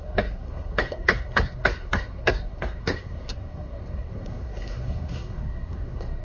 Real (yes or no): no